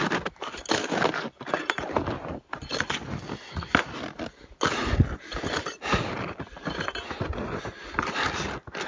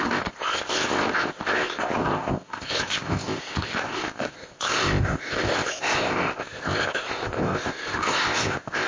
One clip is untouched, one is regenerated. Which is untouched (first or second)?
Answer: first